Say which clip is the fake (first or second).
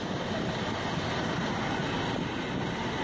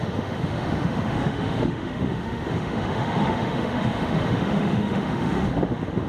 second